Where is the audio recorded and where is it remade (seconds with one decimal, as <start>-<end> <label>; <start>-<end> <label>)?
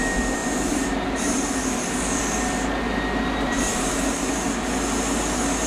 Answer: 0.0-0.4 recorded; 0.4-1.7 remade; 1.7-3.7 recorded; 3.7-4.3 remade; 4.3-5.7 recorded